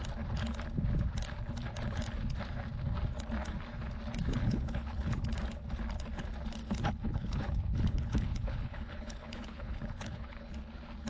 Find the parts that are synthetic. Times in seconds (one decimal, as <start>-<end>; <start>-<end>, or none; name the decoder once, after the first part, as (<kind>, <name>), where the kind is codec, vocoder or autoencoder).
4.4-5.2 (codec, HILCodec); 6.6-10.5